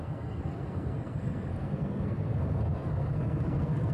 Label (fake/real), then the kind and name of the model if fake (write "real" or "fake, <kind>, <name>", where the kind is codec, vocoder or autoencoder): fake, codec, SNAC